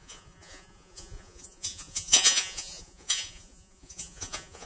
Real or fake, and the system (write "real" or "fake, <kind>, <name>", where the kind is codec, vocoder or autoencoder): fake, vocoder, Vocos